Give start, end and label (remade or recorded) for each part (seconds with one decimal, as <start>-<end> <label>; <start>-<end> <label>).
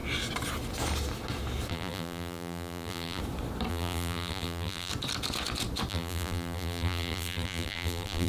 0.0-1.7 recorded; 1.7-3.2 remade; 3.2-3.7 recorded; 3.7-4.9 remade; 4.9-5.9 recorded; 5.9-8.3 remade